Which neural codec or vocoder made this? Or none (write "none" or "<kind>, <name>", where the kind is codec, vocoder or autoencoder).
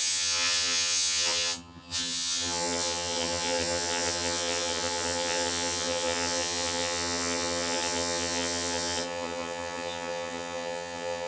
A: vocoder, HiFi-GAN